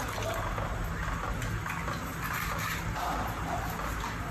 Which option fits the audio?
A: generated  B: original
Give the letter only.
B